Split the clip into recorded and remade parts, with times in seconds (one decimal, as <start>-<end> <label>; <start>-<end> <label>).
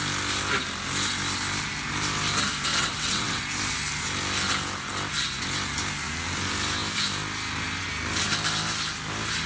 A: 0.0-2.7 recorded; 2.7-3.4 remade; 3.4-9.5 recorded